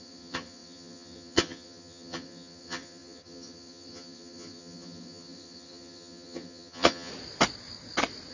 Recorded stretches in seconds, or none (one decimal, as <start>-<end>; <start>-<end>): 7.1-8.3